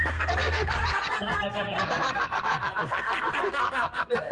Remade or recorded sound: remade